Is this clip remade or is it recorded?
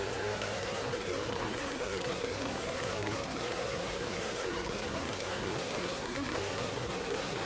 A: remade